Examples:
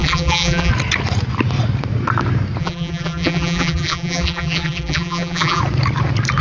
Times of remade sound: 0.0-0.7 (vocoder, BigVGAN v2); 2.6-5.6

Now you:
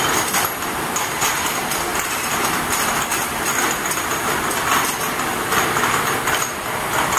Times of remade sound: 1.9-3.3 (vocoder, BigVGAN v2)

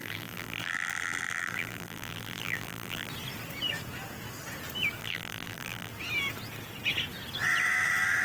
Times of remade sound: 0.0-3.1 (vocoder, BigVGAN v2); 5.0-5.9

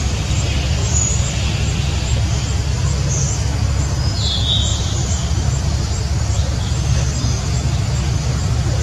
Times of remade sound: 0.8-2.2 (vocoder, BigVGAN v2); 4.7-6.0

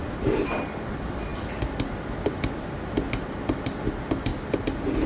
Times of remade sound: 0.0-4.3 (vocoder, BigVGAN v2)

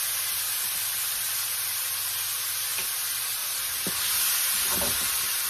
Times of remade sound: none